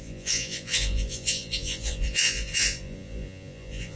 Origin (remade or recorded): remade